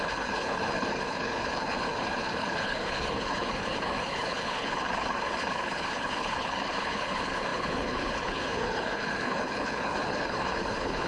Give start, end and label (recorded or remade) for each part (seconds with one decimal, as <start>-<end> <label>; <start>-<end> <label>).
0.0-11.1 remade